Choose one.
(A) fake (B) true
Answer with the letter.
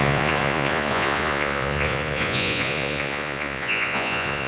A